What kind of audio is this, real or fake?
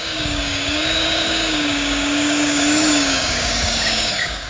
fake